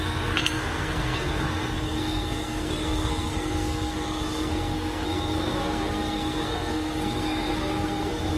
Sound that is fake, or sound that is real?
fake